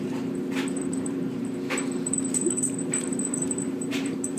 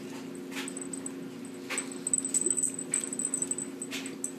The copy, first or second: first